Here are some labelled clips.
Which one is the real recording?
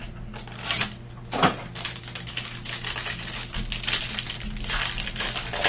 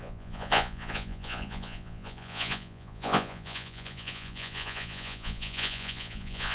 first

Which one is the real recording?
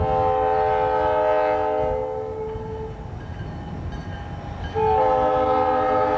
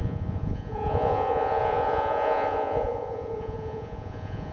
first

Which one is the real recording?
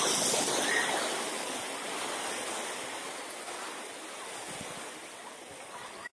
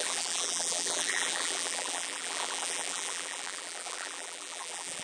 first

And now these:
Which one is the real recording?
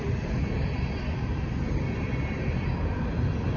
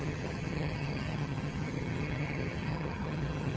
first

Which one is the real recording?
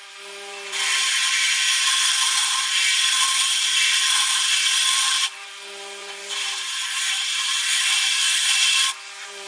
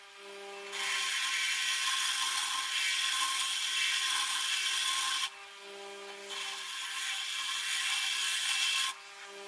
second